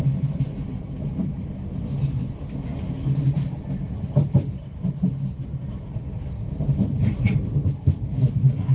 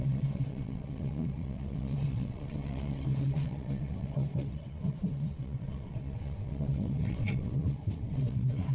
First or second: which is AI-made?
second